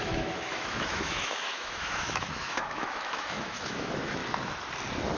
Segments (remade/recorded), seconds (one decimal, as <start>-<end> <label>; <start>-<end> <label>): 0.0-4.2 remade; 4.2-5.2 recorded